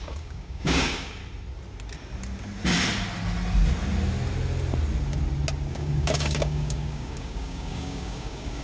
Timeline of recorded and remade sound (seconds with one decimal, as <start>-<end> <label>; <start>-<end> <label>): 0.0-1.2 remade; 1.2-5.7 recorded; 5.7-8.6 remade